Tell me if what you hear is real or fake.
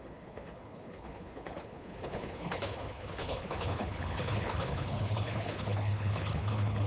fake